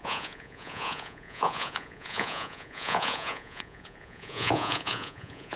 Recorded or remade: remade